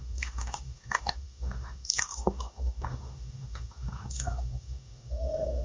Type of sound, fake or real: fake